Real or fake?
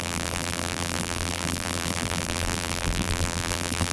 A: fake